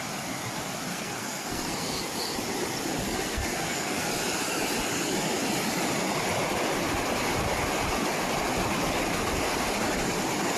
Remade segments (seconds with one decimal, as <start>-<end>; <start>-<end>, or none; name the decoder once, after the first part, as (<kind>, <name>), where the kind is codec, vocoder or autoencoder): 0.9-2.0 (codec, SNAC); 3.0-4.1